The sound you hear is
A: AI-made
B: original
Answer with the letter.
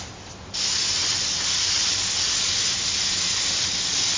B